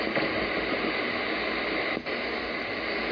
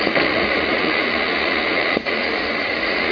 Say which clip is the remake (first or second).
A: second